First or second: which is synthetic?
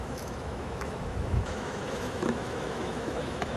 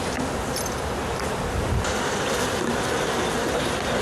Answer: first